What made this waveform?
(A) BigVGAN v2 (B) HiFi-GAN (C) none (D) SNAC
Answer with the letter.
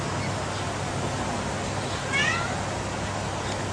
C